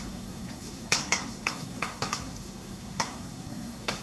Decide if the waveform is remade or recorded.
remade